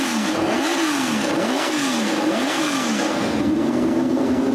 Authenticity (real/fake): fake